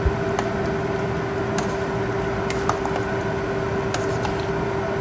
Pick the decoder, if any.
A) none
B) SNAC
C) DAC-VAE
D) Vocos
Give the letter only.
A